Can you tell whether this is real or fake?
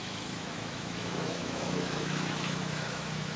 fake